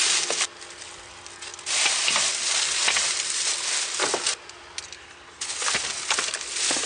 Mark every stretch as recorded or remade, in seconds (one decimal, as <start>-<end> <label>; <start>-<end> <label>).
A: 0.0-6.9 recorded